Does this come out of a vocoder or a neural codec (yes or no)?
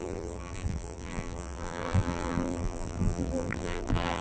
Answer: yes